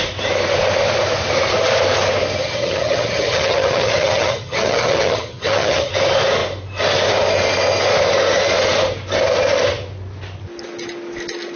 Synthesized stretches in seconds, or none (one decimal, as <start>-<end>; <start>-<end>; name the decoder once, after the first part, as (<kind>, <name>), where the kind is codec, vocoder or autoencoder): 2.4-5.9 (vocoder, HiFi-GAN)